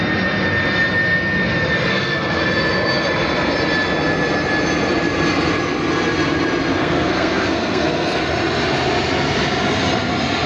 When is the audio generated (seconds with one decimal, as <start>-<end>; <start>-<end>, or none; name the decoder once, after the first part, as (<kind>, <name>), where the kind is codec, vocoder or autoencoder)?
1.9-2.4 (codec, SNAC); 6.8-8.2